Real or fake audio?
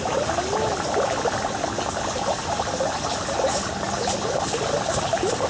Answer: real